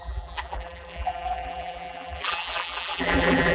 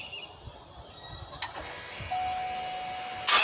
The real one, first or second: second